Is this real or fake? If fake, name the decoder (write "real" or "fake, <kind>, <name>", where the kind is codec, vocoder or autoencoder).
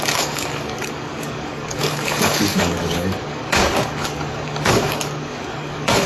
fake, codec, DAC